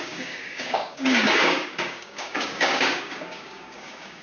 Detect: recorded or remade remade